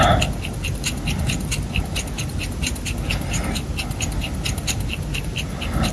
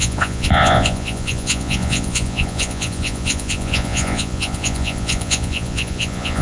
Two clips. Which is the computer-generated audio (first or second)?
second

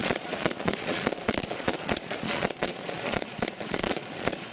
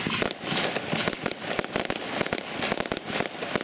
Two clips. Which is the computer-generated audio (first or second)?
first